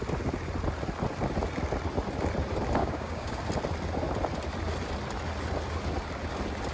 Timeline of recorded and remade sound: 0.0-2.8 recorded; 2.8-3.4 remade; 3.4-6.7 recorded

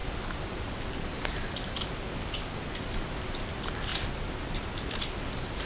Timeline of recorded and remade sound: 0.0-5.7 recorded